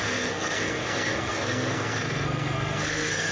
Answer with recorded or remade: remade